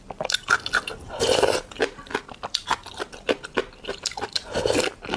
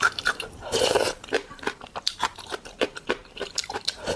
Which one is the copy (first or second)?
second